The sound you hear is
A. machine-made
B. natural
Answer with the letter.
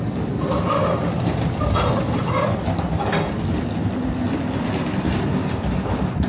B